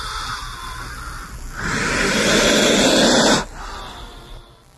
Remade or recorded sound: recorded